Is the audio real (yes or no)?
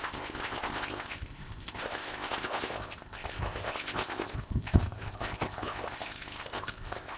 no